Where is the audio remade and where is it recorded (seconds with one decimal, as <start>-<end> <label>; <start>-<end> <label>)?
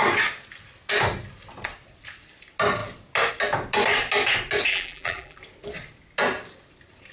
0.0-4.7 recorded; 4.7-5.4 remade; 5.4-7.1 recorded